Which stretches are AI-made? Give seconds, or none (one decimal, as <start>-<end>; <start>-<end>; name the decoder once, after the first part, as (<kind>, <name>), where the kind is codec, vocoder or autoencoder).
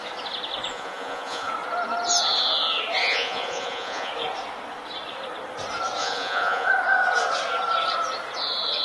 0.7-1.5 (vocoder, Vocos); 3.0-4.1; 6.0-6.7